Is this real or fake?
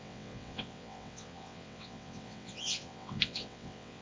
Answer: fake